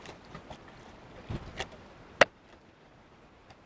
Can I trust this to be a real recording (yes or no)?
yes